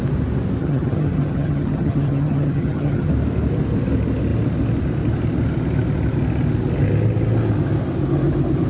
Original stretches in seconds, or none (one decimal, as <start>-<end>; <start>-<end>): 0.0-0.6; 3.1-8.7